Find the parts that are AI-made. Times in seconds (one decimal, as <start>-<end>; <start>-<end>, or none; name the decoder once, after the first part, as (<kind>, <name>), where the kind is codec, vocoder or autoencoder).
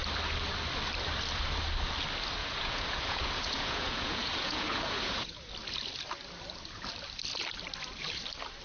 2.4-5.5 (vocoder, Vocos)